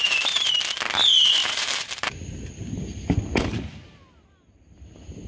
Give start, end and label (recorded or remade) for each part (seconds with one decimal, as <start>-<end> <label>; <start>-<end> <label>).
0.0-0.5 remade; 0.5-1.4 recorded; 1.4-2.2 remade; 2.2-5.3 recorded